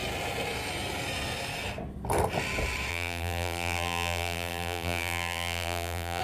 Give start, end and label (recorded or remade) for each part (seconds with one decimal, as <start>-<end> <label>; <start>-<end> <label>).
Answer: 0.0-2.9 recorded; 2.9-6.2 remade